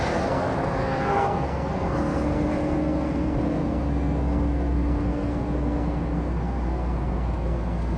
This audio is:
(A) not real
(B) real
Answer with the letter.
A